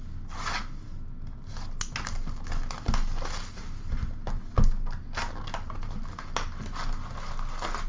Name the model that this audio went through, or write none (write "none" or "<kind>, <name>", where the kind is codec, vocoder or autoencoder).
none